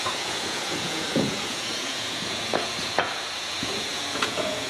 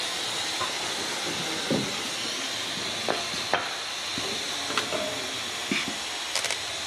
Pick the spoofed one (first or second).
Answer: first